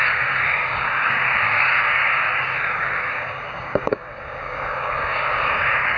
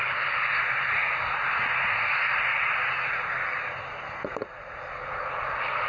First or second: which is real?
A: second